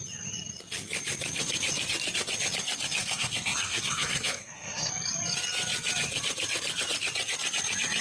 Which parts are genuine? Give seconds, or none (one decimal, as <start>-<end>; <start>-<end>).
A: 0.0-3.0; 4.9-8.0